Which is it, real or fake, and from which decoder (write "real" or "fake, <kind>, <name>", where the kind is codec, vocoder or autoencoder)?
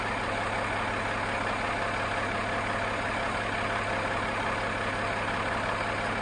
real